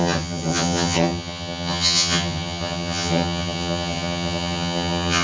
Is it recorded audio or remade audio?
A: remade